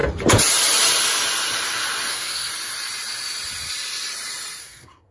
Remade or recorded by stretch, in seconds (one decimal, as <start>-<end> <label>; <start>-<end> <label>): 0.0-2.1 recorded; 2.1-2.5 remade; 2.5-4.6 recorded; 4.6-5.1 remade